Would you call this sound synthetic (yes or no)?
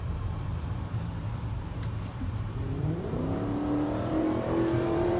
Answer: yes